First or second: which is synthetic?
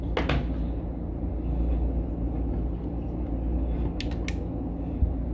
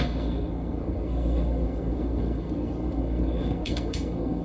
second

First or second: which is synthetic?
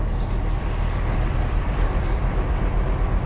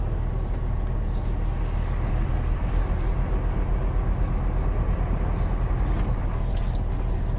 first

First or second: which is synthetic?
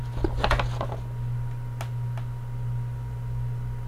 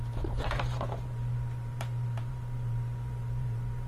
second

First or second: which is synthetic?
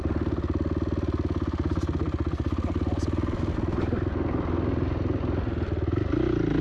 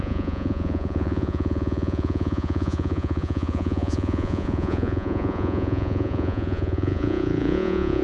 second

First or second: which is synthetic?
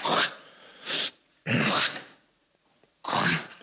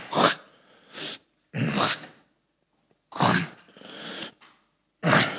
first